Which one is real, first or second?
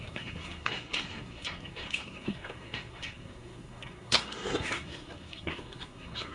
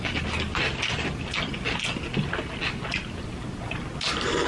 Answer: second